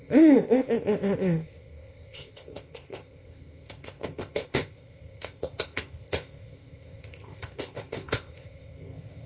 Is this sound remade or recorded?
remade